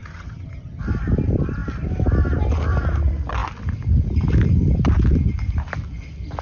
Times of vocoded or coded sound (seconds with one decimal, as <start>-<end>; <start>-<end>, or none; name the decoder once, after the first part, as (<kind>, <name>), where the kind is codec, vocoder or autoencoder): 0.0-0.8 (vocoder, HiFi-GAN)